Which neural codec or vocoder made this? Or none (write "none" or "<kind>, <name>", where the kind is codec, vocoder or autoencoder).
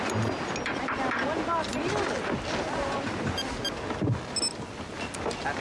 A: none